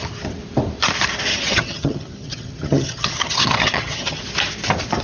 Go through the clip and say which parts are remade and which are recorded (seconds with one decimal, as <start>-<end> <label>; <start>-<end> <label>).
0.0-1.3 recorded; 1.3-4.2 remade; 4.2-5.0 recorded